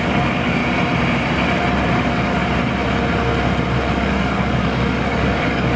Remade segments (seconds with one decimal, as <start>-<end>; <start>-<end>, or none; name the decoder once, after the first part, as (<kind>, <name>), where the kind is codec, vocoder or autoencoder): 0.0-0.6 (codec, DAC); 2.0-2.4; 3.9-5.8